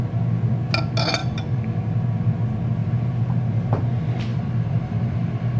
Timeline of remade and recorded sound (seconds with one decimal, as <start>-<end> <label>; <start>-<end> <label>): 0.0-1.2 recorded; 1.2-1.8 remade; 1.8-4.3 recorded; 4.3-5.6 remade